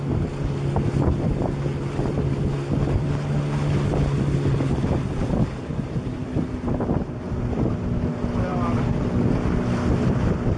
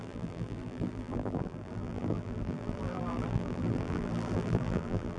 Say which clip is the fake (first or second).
second